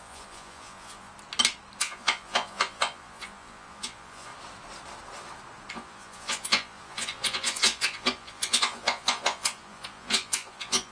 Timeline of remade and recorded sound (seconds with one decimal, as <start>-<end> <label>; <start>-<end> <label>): 0.0-1.1 remade; 1.1-1.8 recorded; 1.8-4.3 remade; 4.3-5.7 recorded; 5.7-10.9 remade